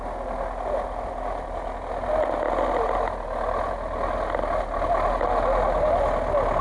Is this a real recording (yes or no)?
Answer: yes